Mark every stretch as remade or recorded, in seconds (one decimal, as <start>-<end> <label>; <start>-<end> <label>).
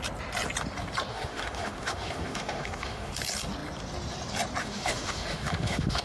0.0-1.1 recorded; 1.1-3.1 remade; 3.1-4.6 recorded; 4.6-6.0 remade